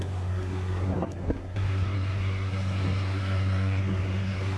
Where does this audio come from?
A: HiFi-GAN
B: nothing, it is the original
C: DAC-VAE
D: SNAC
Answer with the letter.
D